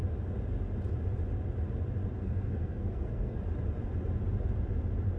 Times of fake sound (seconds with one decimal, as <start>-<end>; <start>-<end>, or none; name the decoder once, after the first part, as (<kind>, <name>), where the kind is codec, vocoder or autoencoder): 2.2-3.4 (codec, SNAC)